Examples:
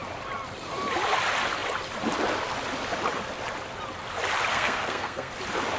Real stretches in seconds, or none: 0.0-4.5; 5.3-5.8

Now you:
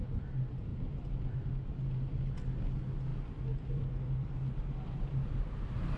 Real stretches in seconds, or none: 0.0-0.7; 1.7-3.1; 3.9-6.0

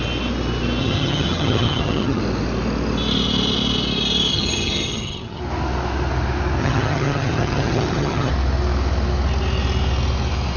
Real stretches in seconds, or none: 0.0-0.8; 2.2-4.3; 5.4-6.6; 8.3-10.6

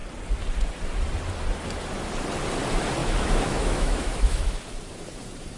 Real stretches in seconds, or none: 0.0-3.0; 4.6-5.6